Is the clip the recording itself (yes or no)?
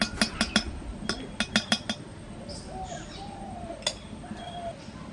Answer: yes